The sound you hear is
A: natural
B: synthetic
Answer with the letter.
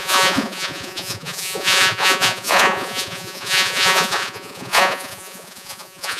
B